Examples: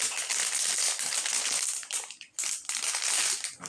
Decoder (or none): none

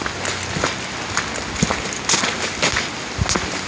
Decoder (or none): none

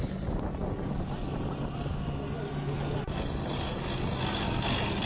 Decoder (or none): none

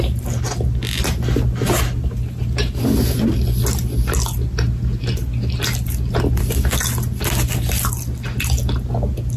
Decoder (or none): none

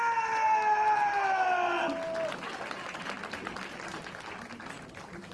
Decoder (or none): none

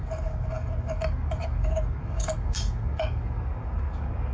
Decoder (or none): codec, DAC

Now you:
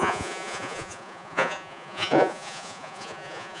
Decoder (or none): vocoder, Vocos